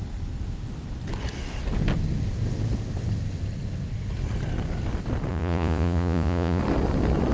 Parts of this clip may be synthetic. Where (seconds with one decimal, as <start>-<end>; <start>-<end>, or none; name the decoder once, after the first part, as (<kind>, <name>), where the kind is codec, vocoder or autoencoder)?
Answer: 5.3-6.6 (vocoder, Vocos)